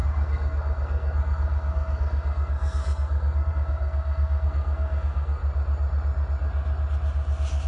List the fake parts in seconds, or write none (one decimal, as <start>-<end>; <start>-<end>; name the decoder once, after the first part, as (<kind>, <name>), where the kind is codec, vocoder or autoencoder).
0.0-5.4 (codec, SNAC)